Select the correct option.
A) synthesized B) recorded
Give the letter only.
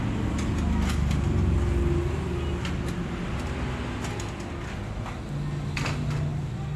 B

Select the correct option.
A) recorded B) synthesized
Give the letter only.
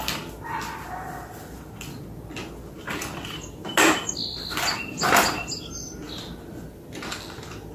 A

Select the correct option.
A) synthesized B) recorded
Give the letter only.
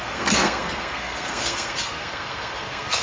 A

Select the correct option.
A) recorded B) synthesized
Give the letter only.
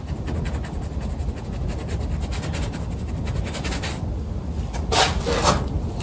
A